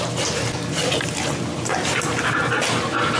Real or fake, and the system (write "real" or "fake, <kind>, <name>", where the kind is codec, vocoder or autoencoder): real